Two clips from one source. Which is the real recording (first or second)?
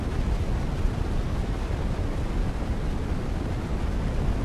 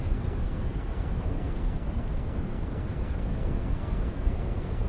first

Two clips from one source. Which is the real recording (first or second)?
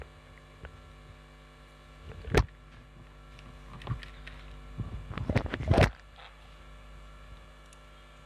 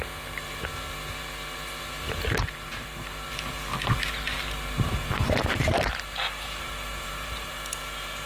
first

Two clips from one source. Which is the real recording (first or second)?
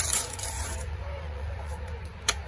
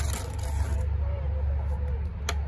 second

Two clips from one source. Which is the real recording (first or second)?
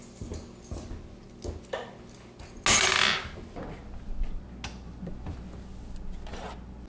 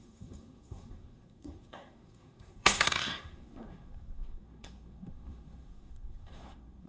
first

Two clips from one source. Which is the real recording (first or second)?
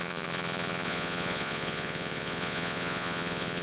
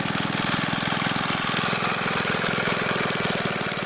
second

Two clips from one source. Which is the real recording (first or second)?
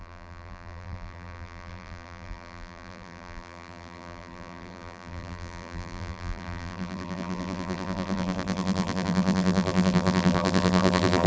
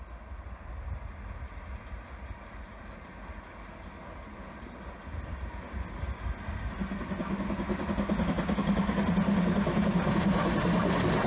second